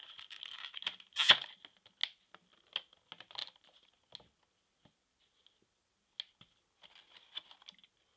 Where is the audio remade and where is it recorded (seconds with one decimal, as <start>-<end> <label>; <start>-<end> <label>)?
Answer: 0.0-8.2 recorded